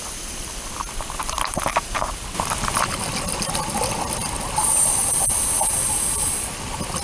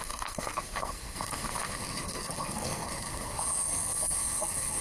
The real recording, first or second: first